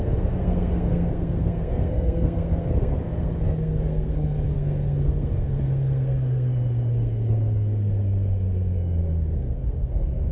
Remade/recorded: remade